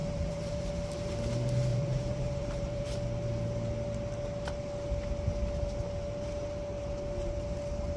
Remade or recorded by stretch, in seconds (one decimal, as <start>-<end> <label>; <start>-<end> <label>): 0.0-0.7 remade; 0.7-1.7 recorded; 1.7-2.8 remade; 2.8-8.0 recorded